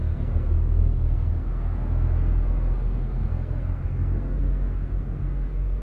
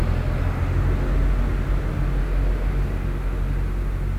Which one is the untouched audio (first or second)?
second